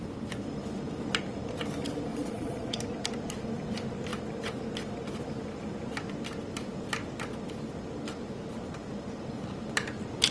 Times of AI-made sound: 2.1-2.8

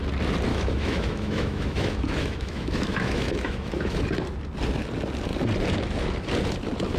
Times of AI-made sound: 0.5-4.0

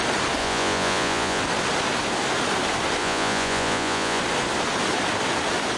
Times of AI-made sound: 0.4-1.4; 3.0-4.2

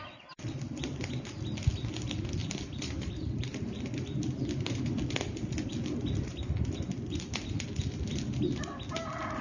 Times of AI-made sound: 2.4-3.6

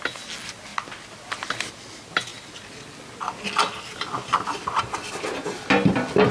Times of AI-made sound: none